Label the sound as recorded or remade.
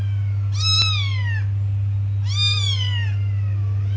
recorded